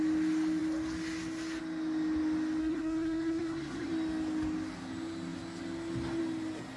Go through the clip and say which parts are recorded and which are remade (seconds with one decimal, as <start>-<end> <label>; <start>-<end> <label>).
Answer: 0.0-2.6 recorded; 2.6-3.9 remade; 3.9-6.8 recorded